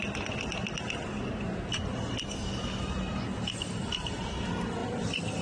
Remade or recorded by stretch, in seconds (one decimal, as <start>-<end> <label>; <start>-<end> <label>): 0.0-5.4 recorded